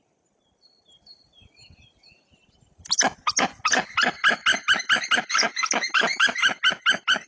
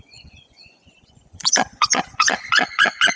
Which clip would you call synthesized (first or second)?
second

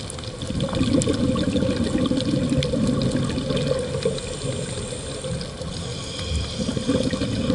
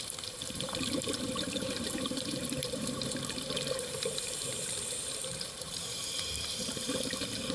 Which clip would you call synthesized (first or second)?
second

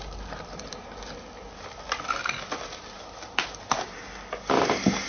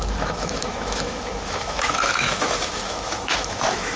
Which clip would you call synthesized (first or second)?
second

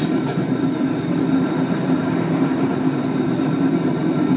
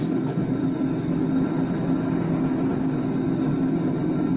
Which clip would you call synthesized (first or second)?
first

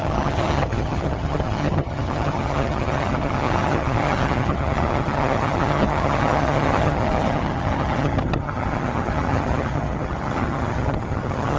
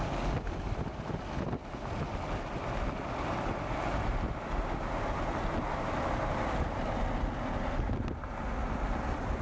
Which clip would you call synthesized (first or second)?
first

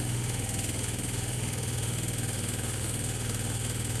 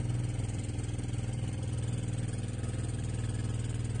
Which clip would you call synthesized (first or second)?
first